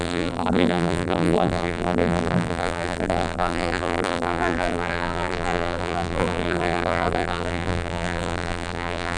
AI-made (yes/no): yes